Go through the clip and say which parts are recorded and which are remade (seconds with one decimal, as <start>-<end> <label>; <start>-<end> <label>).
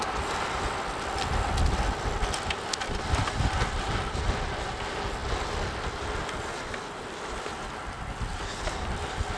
0.0-9.4 recorded